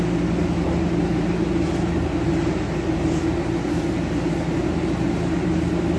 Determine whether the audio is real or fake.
real